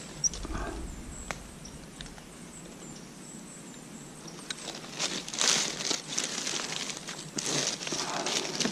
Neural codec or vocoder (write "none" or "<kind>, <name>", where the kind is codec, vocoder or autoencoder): none